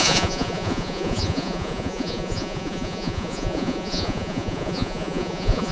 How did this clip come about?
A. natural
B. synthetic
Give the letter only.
B